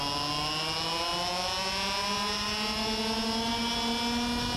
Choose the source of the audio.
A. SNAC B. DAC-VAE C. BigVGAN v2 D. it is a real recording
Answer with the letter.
D